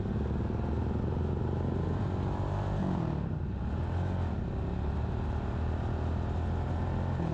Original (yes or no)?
yes